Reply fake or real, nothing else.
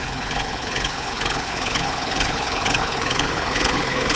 fake